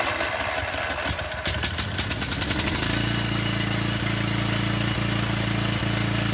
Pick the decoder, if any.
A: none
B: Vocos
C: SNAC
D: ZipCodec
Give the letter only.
A